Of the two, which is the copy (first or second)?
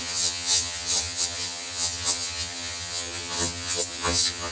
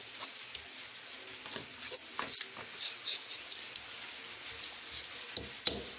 first